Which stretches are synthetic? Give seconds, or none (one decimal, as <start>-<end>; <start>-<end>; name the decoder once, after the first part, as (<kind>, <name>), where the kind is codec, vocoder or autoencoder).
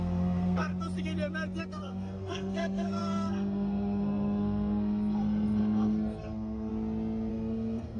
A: 0.0-0.7 (codec, SNAC); 1.6-6.7; 7.3-8.0